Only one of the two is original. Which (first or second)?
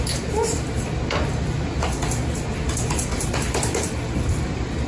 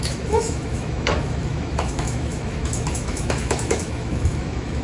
first